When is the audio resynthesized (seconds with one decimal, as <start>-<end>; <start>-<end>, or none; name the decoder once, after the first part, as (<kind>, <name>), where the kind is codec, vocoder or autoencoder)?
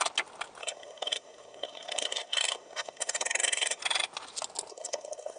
0.6-3.8 (codec, SNAC); 4.7-5.4